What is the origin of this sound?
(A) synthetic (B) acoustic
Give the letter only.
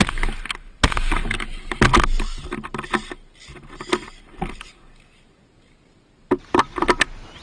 B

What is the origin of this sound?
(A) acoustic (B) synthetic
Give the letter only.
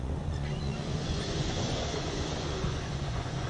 B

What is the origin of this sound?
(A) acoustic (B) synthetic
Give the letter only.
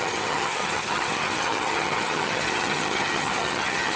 B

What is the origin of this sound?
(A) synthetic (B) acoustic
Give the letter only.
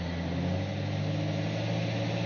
B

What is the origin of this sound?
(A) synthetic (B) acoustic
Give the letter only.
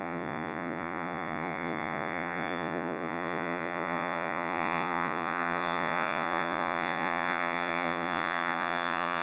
A